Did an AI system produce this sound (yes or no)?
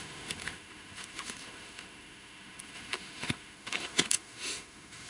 yes